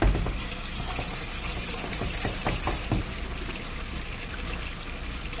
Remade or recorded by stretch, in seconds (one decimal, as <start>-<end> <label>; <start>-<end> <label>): 0.0-1.5 recorded; 1.5-4.7 remade; 4.7-5.4 recorded